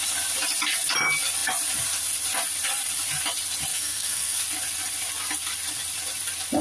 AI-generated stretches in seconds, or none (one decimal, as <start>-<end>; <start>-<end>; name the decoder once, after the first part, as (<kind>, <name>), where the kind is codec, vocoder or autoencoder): 3.7-4.4 (codec, SNAC)